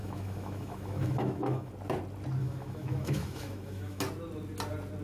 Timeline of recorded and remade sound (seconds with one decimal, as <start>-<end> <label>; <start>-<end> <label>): 0.0-1.7 remade; 1.7-2.4 recorded; 2.4-4.0 remade; 4.0-5.0 recorded